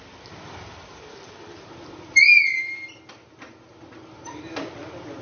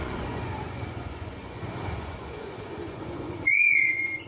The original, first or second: first